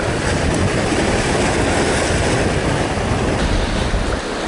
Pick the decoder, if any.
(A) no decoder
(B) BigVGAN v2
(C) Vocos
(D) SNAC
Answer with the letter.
A